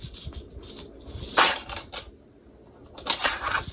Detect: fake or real real